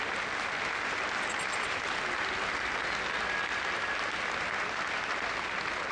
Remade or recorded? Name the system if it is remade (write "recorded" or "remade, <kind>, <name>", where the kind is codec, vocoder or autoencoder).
recorded